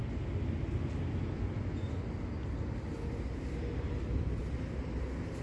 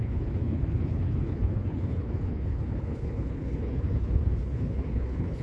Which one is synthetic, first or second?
second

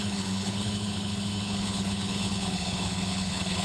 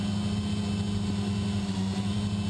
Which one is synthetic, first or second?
first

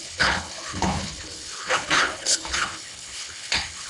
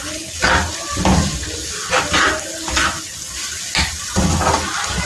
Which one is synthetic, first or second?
first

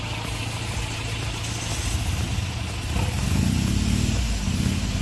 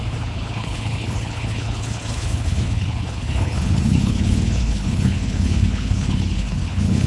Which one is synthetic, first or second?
second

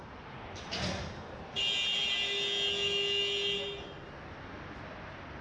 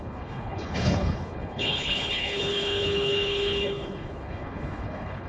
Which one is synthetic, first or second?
second